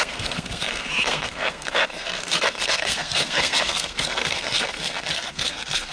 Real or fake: fake